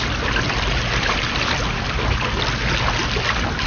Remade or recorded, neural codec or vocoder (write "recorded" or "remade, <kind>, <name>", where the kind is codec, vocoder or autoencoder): recorded